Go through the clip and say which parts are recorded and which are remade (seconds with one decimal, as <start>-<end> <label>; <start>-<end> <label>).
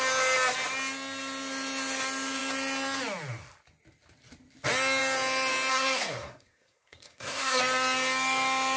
0.0-5.7 recorded; 5.7-7.6 remade; 7.6-8.8 recorded